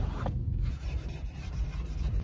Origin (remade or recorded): recorded